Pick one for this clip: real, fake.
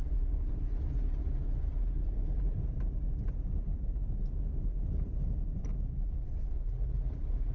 real